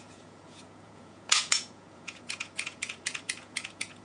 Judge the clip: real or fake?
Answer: fake